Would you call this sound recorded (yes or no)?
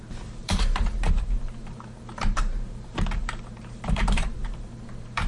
no